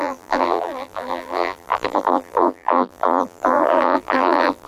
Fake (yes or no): yes